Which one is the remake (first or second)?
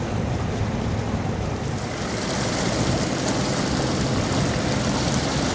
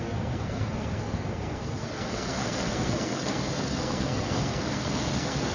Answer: second